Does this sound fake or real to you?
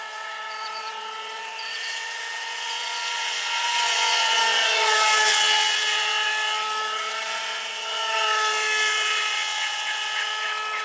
fake